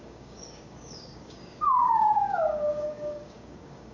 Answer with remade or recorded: remade